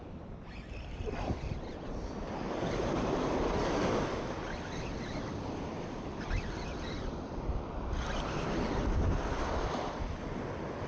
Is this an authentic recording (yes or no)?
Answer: yes